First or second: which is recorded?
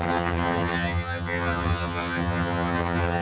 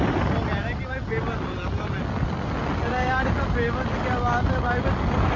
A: second